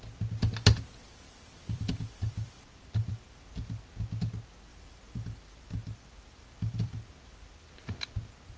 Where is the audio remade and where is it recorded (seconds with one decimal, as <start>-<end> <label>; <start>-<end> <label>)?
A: 0.0-1.0 recorded; 1.0-3.8 remade; 3.8-4.7 recorded; 4.7-8.1 remade; 8.1-8.6 recorded